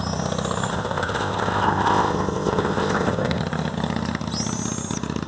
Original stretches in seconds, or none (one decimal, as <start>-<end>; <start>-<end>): 0.0-0.7; 3.4-5.3